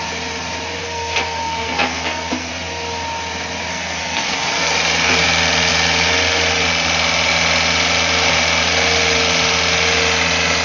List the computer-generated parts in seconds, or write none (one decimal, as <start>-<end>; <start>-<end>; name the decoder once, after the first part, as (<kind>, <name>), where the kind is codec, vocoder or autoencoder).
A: 0.8-2.5 (codec, SNAC); 3.7-4.7